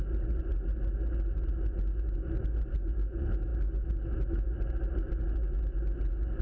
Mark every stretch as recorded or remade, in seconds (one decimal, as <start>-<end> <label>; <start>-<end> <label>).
0.0-6.4 recorded